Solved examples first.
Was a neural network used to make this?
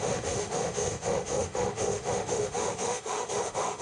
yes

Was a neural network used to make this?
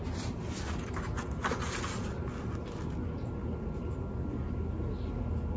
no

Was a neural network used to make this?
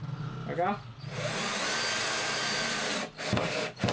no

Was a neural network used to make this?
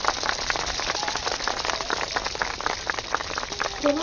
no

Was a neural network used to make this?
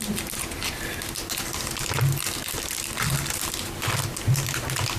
no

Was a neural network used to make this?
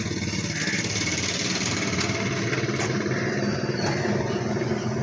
no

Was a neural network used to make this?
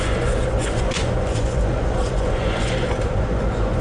yes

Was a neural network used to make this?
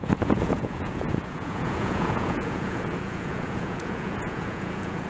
yes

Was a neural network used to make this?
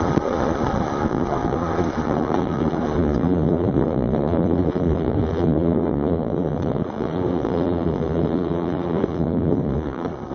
yes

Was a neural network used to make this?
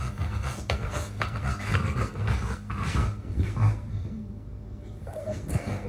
yes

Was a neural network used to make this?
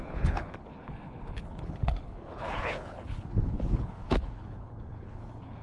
yes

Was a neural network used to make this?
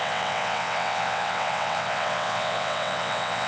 yes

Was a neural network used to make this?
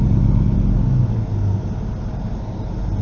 no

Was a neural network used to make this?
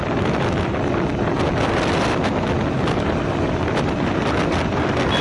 no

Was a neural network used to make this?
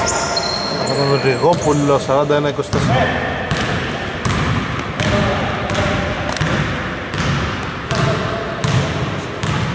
no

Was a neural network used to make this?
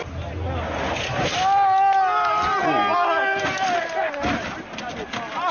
no